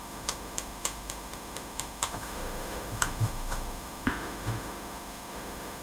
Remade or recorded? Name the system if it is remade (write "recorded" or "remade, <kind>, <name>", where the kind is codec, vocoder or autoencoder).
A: remade, autoencoder, DAC-VAE